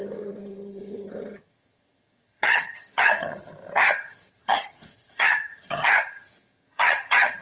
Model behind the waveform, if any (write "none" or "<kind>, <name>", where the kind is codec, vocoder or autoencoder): vocoder, HiFi-GAN